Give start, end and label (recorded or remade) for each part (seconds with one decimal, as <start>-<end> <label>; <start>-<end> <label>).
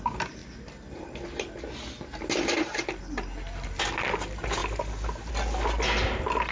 0.0-6.5 recorded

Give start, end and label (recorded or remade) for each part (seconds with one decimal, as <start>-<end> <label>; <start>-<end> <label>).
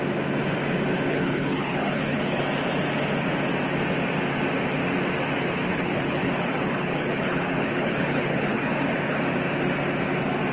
0.0-1.1 recorded; 1.1-2.4 remade; 2.4-5.7 recorded; 5.7-8.7 remade; 8.7-10.5 recorded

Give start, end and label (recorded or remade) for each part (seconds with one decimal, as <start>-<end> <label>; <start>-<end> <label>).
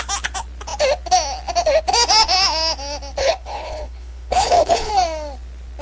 0.0-3.2 recorded; 3.2-4.9 remade; 4.9-5.8 recorded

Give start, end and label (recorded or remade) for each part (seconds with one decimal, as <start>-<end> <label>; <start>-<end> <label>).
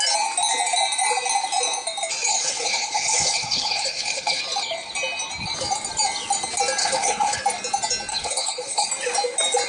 0.0-2.3 recorded; 2.3-4.4 remade; 4.4-6.8 recorded; 6.8-7.4 remade; 7.4-8.1 recorded; 8.1-8.9 remade; 8.9-9.7 recorded